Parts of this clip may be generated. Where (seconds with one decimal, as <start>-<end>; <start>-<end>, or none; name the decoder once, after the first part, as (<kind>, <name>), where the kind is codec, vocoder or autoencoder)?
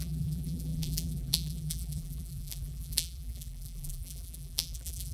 0.0-5.1 (vocoder, BigVGAN v2)